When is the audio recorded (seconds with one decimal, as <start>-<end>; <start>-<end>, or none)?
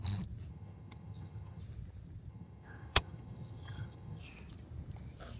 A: 0.0-0.5; 1.6-2.3; 4.2-5.4